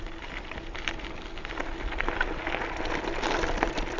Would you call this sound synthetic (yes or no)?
no